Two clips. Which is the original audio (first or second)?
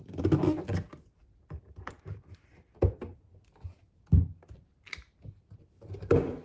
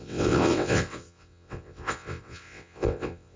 first